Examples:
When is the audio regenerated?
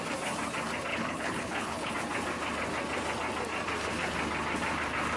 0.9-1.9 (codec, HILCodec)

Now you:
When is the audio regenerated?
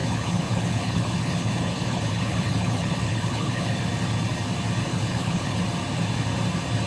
0.0-3.8 (codec, HILCodec); 4.9-5.6